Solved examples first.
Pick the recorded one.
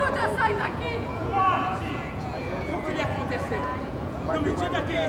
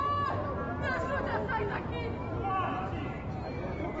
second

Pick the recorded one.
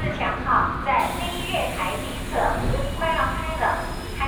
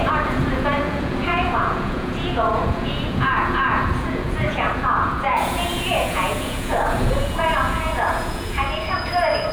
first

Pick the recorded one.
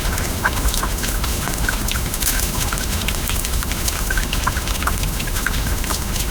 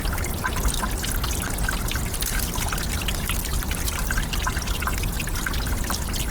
second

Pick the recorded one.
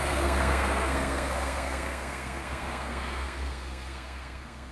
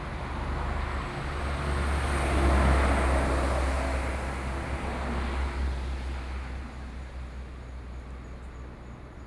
second